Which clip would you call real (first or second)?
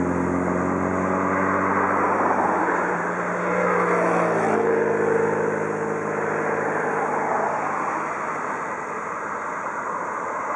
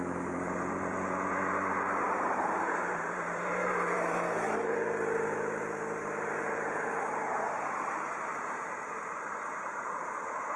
first